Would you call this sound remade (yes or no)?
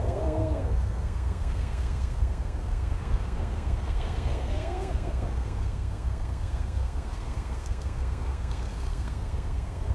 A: yes